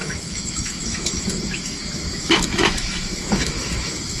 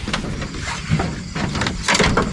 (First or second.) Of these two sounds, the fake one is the first